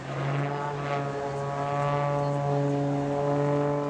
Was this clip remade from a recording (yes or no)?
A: no